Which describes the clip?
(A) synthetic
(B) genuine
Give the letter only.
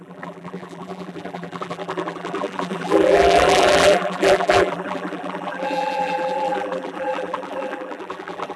A